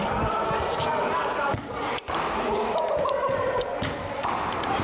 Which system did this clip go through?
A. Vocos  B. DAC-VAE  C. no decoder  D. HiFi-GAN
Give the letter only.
C